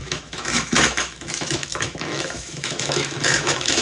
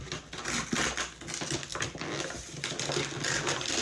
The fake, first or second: first